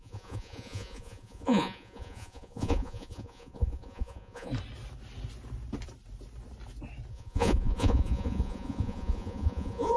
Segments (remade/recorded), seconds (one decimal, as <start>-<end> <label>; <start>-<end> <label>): 0.0-4.5 remade; 4.5-7.1 recorded; 7.1-10.0 remade